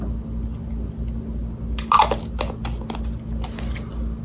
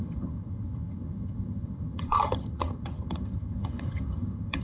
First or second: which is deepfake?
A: second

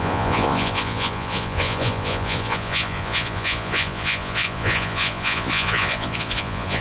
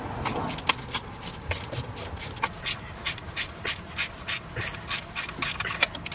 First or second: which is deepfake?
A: first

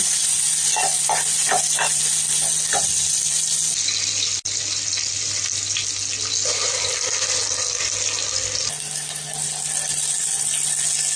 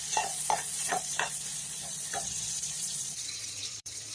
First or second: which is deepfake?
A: second